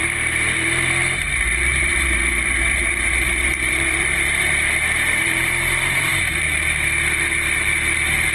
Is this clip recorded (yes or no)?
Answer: no